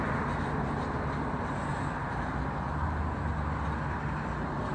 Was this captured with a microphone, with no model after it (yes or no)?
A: yes